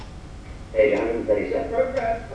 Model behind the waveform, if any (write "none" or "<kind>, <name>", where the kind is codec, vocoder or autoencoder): none